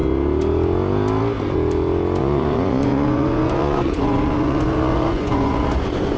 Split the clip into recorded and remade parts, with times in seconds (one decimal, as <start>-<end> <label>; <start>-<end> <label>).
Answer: 0.0-2.2 recorded; 2.2-6.2 remade